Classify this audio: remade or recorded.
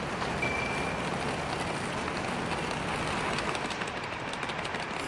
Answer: recorded